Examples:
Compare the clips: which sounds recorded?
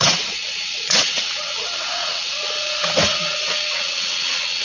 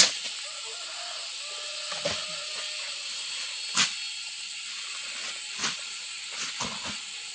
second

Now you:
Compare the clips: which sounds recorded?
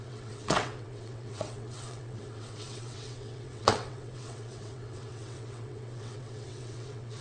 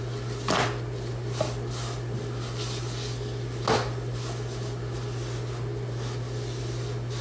second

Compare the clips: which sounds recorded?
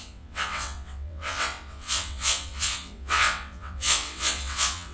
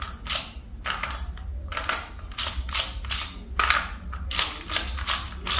second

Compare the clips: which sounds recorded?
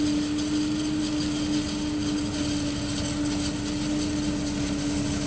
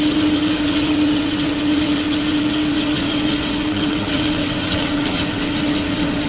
first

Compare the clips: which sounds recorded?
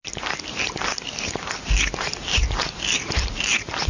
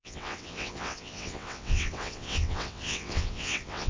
first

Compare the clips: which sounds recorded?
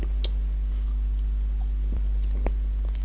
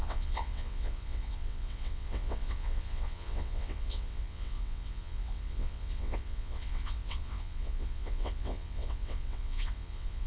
first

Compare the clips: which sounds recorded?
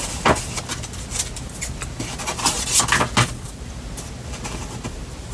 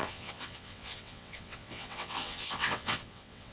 first